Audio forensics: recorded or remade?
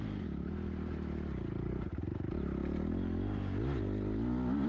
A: recorded